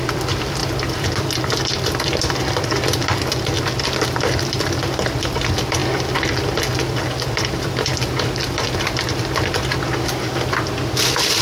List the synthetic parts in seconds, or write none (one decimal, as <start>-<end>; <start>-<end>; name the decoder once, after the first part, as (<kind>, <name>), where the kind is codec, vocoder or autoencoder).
0.0-5.8 (vocoder, BigVGAN v2); 6.4-11.4